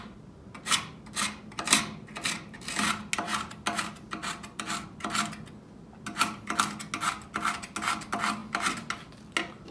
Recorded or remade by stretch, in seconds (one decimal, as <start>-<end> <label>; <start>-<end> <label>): 0.0-9.7 recorded